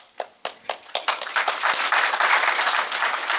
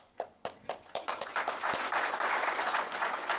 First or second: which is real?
first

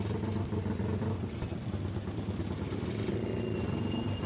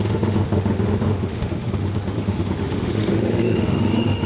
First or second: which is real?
first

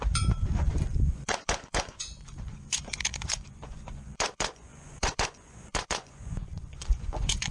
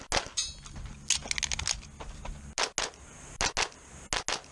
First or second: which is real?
second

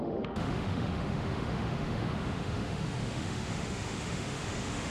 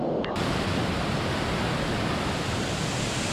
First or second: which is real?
second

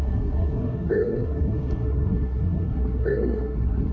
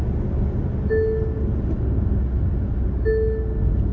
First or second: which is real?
second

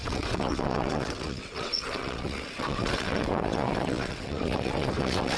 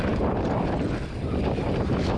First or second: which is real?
second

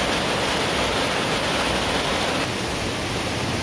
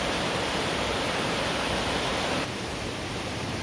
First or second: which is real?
first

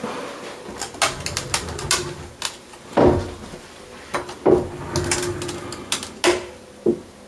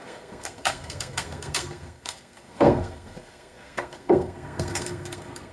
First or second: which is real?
first